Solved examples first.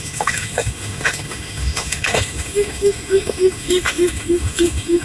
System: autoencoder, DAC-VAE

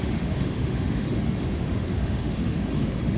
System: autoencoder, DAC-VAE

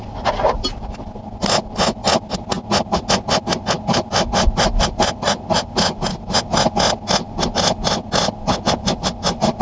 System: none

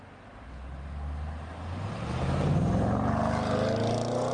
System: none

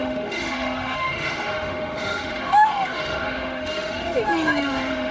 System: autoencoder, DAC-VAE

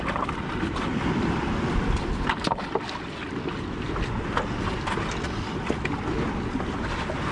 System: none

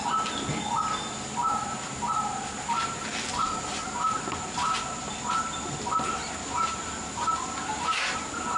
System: none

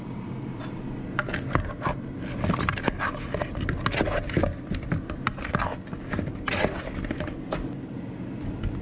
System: none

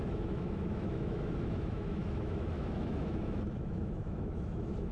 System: autoencoder, DAC-VAE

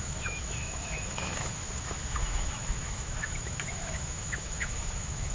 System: autoencoder, DAC-VAE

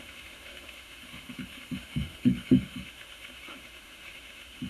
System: autoencoder, DAC-VAE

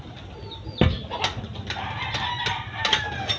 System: none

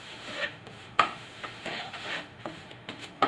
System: autoencoder, DAC-VAE